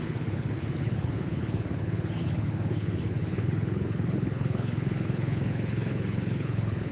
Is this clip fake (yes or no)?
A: yes